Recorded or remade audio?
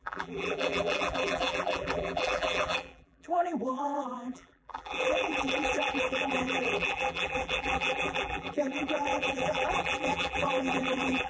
remade